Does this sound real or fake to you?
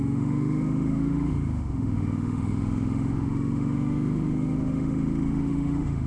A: fake